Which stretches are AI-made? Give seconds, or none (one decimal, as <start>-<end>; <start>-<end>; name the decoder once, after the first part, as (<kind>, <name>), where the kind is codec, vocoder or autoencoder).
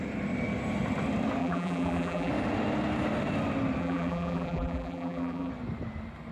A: 1.4-2.3 (vocoder, BigVGAN v2); 3.8-5.5